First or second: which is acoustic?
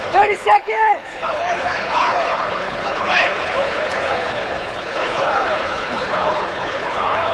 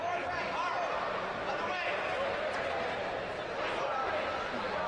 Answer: second